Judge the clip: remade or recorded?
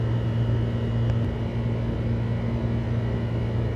recorded